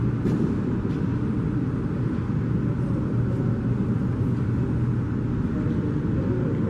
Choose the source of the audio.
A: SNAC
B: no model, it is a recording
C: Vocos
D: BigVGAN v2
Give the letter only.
B